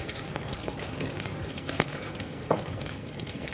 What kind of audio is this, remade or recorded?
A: remade